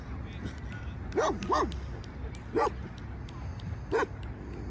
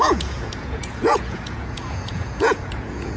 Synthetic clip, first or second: second